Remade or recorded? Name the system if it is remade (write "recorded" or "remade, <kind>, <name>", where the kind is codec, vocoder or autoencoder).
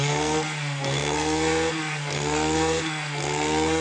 remade, codec, SNAC